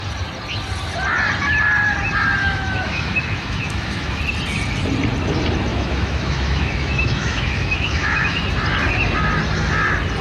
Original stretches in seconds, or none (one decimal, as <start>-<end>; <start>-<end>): 0.0-2.4; 4.2-5.7; 8.4-10.2